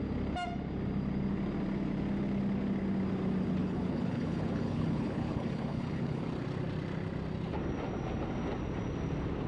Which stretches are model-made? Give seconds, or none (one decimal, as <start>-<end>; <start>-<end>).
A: 3.6-6.2